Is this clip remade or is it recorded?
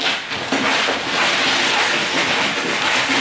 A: recorded